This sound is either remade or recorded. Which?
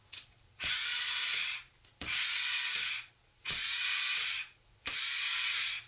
remade